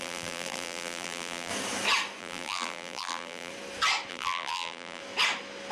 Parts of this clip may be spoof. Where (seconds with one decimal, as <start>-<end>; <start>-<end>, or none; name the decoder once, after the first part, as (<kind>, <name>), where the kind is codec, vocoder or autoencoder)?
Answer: 0.0-1.5 (vocoder, BigVGAN v2); 2.2-3.5; 4.1-5.0